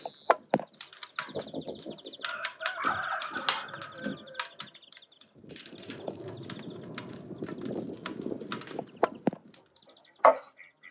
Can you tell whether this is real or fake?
real